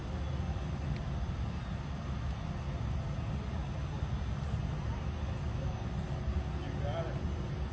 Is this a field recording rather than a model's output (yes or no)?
yes